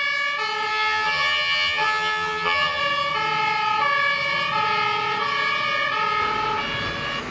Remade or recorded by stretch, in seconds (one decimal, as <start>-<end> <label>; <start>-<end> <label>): 0.0-0.7 recorded; 0.7-2.8 remade; 2.8-7.3 recorded